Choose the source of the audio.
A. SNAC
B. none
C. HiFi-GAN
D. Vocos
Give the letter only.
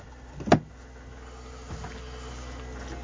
B